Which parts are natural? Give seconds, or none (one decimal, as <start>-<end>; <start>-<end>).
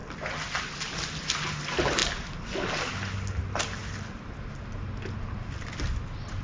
0.0-6.4